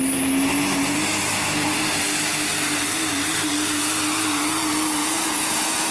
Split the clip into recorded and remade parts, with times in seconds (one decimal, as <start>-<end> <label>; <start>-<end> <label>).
0.0-5.0 recorded; 5.0-5.9 remade